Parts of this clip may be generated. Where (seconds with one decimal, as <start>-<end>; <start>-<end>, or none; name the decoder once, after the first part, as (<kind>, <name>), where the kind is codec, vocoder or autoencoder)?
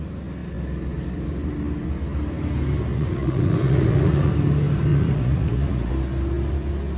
2.9-4.3 (vocoder, Vocos); 4.9-5.9